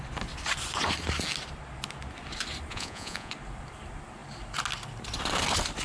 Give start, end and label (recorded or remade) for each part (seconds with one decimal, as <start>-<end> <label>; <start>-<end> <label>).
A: 0.0-2.7 recorded; 2.7-3.3 remade; 3.3-5.8 recorded